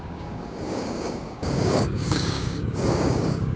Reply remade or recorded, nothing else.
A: remade